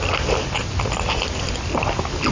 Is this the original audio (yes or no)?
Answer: yes